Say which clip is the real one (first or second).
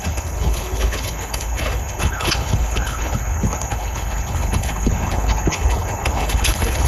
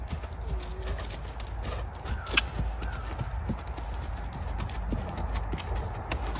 second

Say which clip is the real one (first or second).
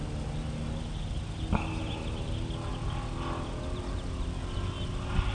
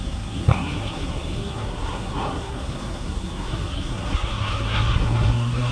first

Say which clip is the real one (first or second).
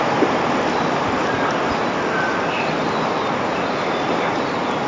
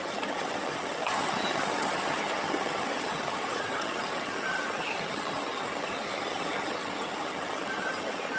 first